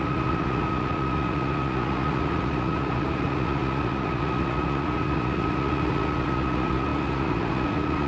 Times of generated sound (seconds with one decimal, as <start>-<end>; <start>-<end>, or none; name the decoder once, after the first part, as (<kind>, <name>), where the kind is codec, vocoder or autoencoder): 0.0-8.1 (vocoder, Vocos)